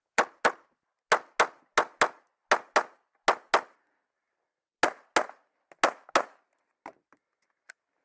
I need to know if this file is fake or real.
real